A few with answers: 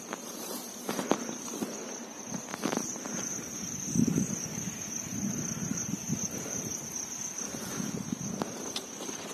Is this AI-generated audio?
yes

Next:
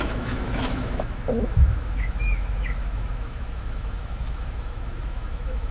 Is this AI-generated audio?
yes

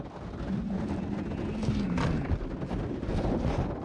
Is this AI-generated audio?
no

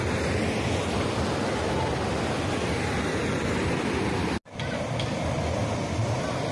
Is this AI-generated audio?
no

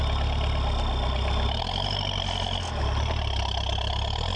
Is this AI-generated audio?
no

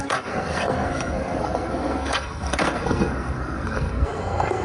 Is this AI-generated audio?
yes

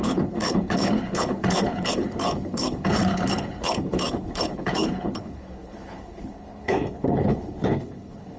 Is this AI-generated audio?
yes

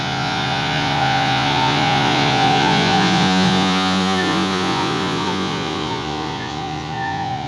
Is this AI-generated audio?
yes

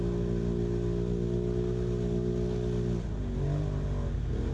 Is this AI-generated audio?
no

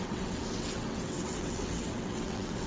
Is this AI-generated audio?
yes